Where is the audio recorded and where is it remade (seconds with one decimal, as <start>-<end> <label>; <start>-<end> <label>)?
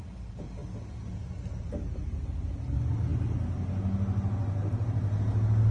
0.0-5.7 recorded